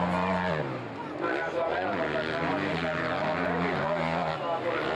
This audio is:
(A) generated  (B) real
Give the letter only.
B